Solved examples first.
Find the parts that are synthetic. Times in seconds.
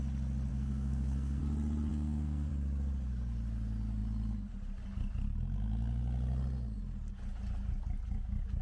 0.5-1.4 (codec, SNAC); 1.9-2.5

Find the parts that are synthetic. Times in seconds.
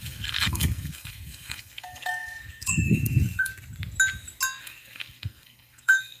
0.0-3.5 (codec, SNAC); 4.6-6.2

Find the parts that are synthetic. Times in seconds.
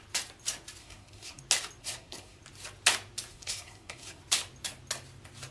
0.8-1.4 (codec, SNAC); 1.8-2.4; 3.3-4.2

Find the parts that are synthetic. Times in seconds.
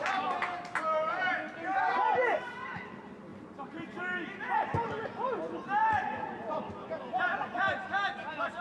3.3-4.4 (vocoder, BigVGAN v2); 7.3-7.9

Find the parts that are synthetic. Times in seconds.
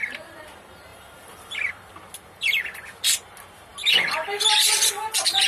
none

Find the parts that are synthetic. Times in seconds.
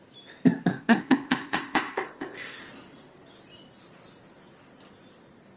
0.7-2.6 (codec, ZipCodec)